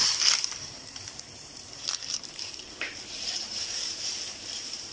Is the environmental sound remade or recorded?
remade